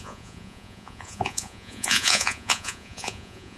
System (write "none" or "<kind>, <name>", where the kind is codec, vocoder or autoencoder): vocoder, Vocos